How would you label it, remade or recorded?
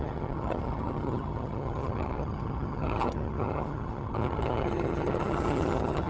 remade